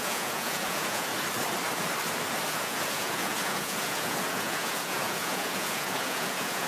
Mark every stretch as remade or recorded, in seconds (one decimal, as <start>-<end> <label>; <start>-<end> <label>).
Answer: 0.0-1.1 remade; 1.1-2.5 recorded; 2.5-6.7 remade